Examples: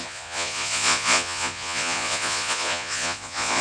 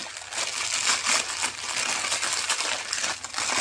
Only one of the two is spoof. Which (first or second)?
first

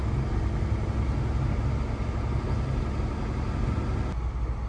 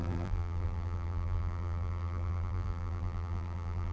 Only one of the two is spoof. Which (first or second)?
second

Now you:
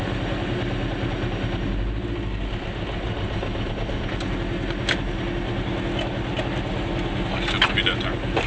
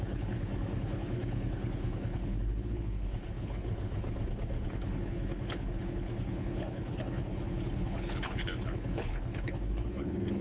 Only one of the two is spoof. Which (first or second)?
second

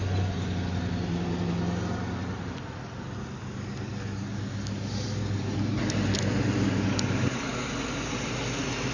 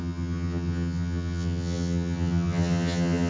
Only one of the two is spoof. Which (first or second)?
second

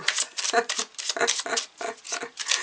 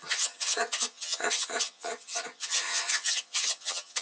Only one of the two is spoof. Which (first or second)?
second